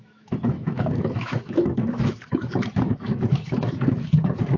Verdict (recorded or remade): remade